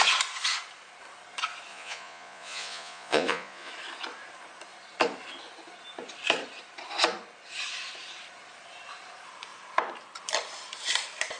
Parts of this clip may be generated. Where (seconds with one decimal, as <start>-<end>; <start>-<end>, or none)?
1.7-3.7